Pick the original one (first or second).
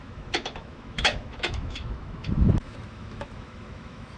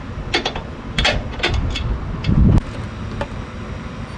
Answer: second